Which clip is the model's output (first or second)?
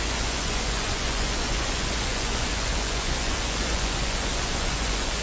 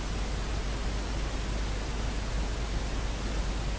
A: first